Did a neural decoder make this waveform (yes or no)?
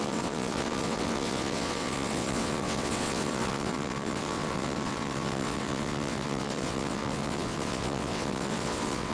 yes